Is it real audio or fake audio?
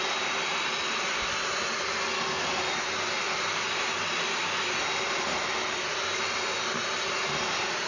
real